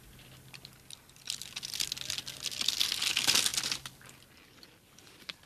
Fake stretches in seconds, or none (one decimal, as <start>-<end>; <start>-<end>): none